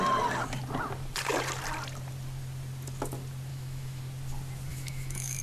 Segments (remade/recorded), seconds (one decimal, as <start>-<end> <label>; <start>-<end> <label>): 0.0-3.5 recorded; 3.5-4.0 remade; 4.0-4.7 recorded; 4.7-5.4 remade